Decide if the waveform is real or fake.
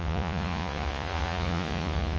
fake